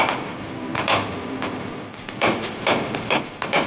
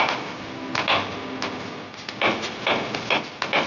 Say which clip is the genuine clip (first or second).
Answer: second